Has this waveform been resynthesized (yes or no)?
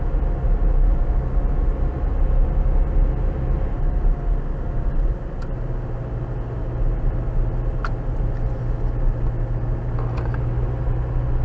no